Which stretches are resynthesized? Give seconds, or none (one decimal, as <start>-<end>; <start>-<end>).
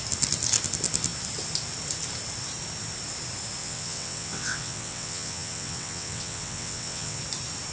3.6-7.2